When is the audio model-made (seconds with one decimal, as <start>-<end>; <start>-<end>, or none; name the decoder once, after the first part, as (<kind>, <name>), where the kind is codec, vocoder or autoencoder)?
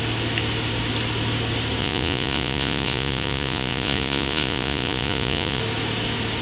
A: 1.8-5.6 (vocoder, Vocos)